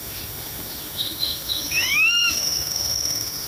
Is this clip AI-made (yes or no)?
yes